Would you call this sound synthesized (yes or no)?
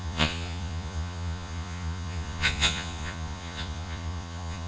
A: yes